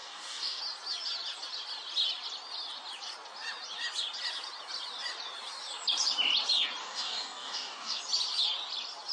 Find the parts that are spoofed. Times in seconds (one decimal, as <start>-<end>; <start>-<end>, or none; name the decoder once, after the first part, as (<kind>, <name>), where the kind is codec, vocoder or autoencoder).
0.0-0.6 (codec, DAC); 6.8-8.0